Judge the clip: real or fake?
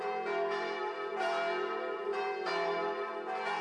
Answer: real